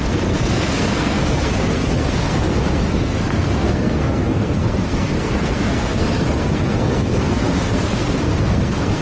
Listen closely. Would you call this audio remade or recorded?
remade